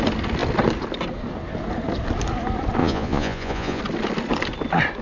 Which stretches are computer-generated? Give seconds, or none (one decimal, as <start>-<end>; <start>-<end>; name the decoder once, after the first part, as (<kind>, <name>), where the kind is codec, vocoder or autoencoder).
2.8-3.8 (vocoder, Vocos)